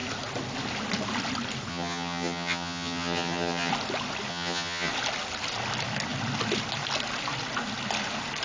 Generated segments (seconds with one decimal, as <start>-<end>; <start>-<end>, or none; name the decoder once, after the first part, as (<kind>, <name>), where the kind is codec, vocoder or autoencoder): 1.7-3.7 (vocoder, HiFi-GAN); 4.3-4.9